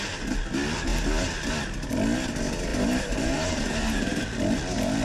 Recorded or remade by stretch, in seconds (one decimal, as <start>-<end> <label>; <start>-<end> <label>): 0.0-2.7 recorded; 2.7-4.2 remade; 4.2-5.0 recorded